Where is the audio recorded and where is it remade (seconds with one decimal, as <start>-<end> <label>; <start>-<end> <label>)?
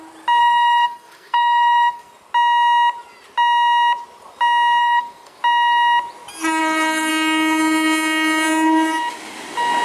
0.0-0.4 recorded; 0.4-2.1 remade; 2.1-4.8 recorded; 4.8-5.4 remade; 5.4-6.6 recorded; 6.6-7.1 remade; 7.1-9.8 recorded